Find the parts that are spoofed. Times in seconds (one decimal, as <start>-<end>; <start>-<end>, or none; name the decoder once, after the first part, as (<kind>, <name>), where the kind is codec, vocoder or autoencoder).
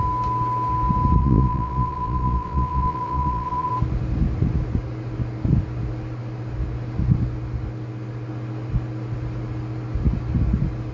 1.2-3.7 (vocoder, Vocos)